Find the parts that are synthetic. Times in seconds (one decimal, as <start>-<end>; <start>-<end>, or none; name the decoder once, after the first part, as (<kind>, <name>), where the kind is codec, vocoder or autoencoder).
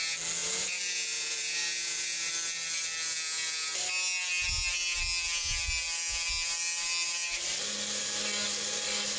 0.4-2.3 (vocoder, Vocos)